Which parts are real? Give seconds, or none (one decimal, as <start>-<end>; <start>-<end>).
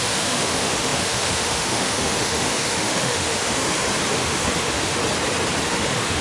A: 3.6-4.1; 5.0-5.6